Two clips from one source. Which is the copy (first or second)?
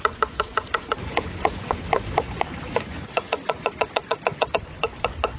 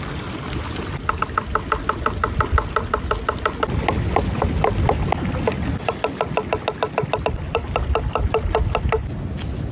first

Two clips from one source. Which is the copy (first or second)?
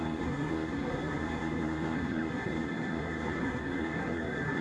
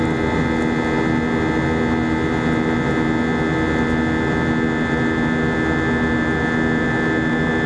first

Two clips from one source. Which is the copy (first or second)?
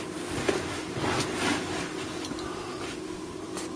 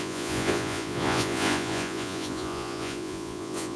second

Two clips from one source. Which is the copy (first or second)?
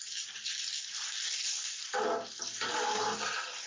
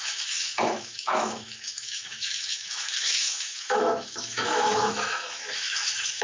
second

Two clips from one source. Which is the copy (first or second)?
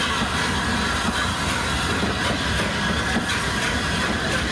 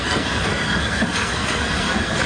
second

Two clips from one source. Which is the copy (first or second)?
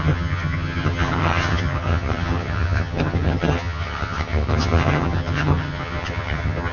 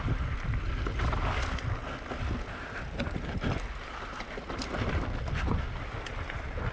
first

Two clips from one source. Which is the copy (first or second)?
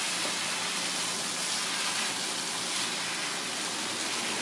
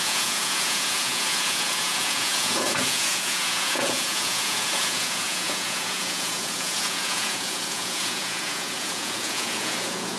second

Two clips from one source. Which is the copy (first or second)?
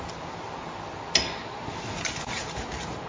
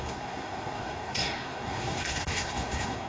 second